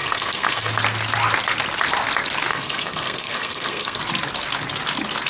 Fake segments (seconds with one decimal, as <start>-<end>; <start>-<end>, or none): 0.0-0.7; 2.5-4.0